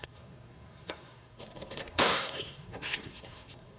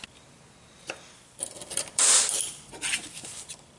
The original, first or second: second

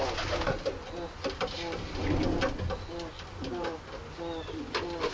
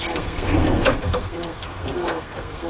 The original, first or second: first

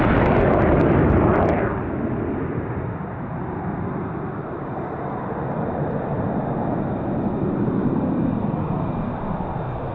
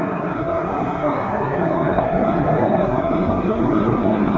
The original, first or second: first